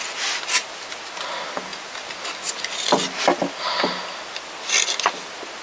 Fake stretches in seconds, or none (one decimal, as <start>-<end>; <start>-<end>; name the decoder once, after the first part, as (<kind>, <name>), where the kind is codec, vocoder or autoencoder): none